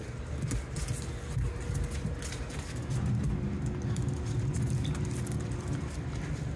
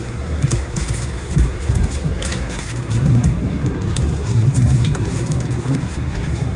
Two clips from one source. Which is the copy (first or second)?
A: second